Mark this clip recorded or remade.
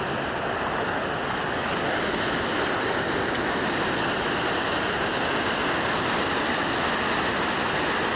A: recorded